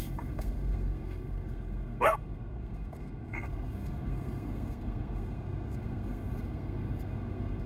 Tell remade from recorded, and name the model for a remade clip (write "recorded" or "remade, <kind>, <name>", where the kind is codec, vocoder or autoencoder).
remade, codec, SNAC